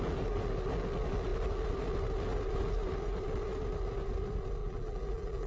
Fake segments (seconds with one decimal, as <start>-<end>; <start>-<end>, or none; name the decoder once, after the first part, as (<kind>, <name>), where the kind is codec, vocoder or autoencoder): 4.6-5.5 (vocoder, BigVGAN v2)